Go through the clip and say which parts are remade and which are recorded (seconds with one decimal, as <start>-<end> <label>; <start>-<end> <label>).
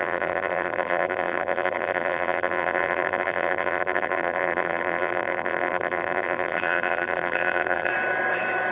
0.0-7.9 remade; 7.9-8.7 recorded